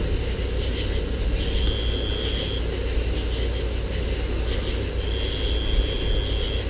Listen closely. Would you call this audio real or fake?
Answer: real